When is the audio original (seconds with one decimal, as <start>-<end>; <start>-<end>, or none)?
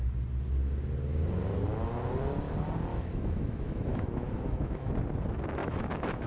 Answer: 0.0-2.9; 4.9-5.6